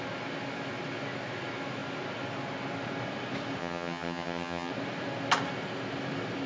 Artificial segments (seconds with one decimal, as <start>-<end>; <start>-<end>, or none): 3.6-4.7